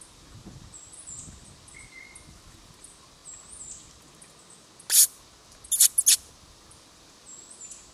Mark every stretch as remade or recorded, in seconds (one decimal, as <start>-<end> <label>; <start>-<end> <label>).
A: 0.0-7.9 recorded